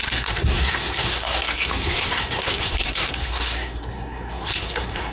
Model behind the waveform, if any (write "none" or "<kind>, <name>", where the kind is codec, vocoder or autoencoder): codec, SNAC